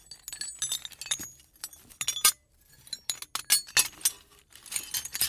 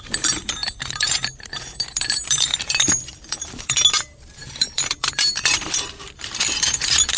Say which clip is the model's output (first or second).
second